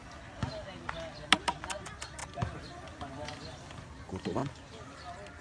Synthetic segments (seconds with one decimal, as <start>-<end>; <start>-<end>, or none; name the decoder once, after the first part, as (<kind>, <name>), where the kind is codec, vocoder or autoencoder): none